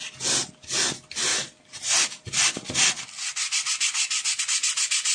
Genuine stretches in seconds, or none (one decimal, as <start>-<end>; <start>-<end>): 0.0-5.1